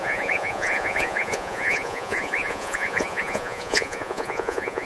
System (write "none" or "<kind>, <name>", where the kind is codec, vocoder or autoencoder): vocoder, Vocos